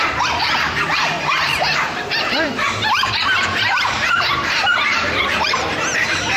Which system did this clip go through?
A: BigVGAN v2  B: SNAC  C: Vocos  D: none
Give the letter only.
A